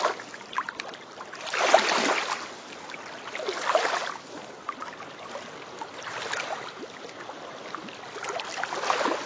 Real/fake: real